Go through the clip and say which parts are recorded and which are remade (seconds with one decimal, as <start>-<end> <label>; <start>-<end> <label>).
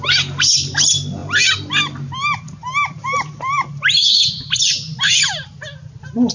0.0-6.3 recorded